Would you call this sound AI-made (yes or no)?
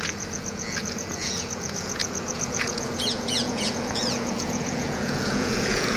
yes